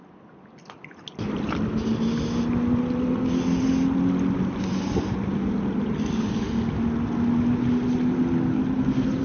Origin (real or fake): real